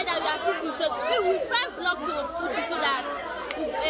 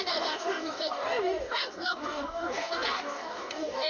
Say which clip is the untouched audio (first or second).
first